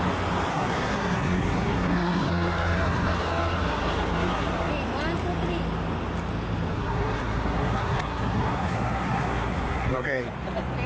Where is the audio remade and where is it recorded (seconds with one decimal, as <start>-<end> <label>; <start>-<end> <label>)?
0.0-0.5 recorded; 0.5-4.7 remade; 4.7-6.7 recorded; 6.7-10.2 remade; 10.2-10.9 recorded